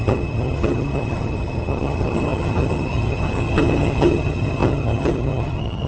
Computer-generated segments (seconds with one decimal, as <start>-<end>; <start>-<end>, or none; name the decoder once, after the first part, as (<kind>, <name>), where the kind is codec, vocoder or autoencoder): 0.0-5.9 (vocoder, HiFi-GAN)